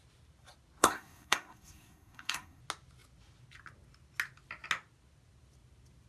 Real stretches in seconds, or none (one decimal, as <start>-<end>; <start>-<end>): 0.0-0.8; 2.6-6.1